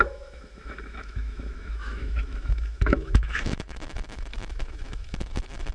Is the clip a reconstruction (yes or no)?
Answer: yes